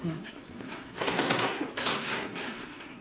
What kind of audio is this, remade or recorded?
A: remade